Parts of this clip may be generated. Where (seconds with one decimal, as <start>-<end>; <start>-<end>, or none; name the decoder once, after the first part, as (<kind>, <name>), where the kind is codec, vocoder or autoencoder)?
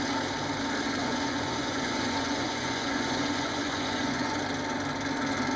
1.0-4.4 (vocoder, Vocos)